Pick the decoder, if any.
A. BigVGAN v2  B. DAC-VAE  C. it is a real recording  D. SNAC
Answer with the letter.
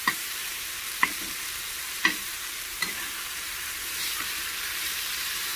A